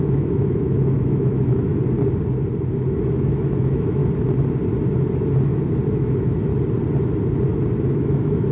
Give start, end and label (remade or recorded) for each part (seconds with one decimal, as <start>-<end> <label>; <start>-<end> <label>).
0.0-1.7 remade; 1.7-3.1 recorded; 3.1-4.0 remade; 4.0-5.9 recorded; 5.9-6.5 remade; 6.5-7.8 recorded; 7.8-8.5 remade